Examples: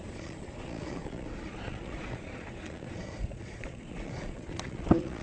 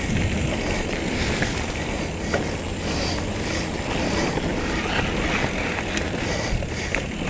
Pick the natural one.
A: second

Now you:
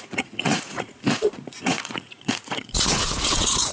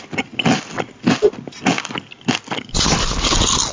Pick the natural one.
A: second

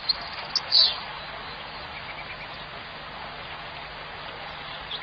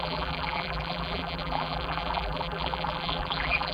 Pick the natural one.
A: first